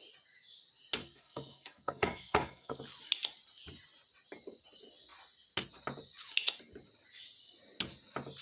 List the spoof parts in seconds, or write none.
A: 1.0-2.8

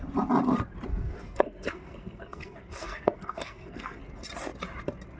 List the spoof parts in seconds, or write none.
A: 0.9-4.0

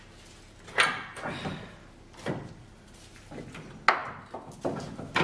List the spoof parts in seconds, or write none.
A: none

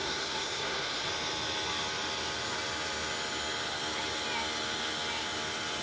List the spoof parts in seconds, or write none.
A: 0.0-1.1